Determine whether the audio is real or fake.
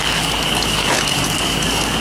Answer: fake